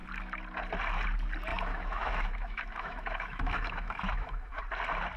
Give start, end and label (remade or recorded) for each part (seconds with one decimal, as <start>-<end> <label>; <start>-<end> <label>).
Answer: 0.0-1.5 recorded; 1.5-4.6 remade; 4.6-5.2 recorded